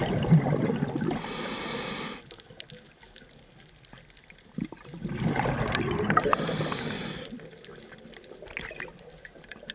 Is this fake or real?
real